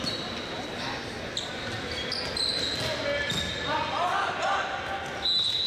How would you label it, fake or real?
real